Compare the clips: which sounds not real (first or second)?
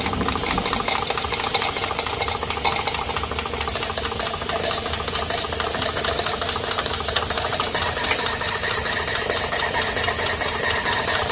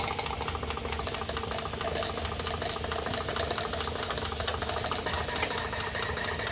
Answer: first